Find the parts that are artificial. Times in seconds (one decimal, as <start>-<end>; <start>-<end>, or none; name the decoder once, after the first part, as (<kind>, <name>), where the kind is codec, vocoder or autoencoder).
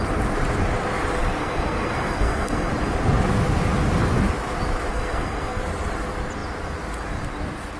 1.4-2.7 (codec, SNAC); 4.9-5.6